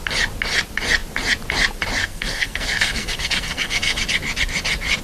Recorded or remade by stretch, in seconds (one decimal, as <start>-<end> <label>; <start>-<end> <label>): 0.0-2.0 recorded; 2.0-4.0 remade; 4.0-5.0 recorded